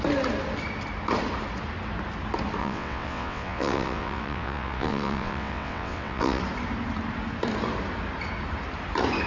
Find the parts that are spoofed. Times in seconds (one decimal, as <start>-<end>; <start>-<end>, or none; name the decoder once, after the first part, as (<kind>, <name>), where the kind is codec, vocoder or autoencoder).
2.6-6.4 (vocoder, WaveNeXt)